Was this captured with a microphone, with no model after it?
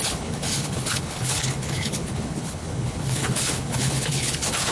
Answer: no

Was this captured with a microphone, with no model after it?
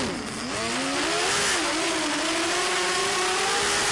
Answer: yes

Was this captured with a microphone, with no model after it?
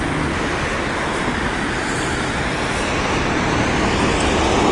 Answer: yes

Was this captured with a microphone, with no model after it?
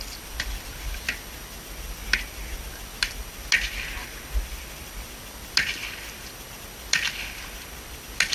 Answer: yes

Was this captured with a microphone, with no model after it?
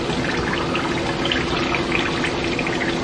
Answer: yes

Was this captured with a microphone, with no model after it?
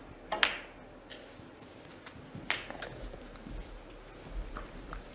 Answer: yes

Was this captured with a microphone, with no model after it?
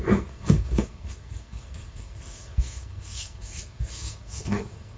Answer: no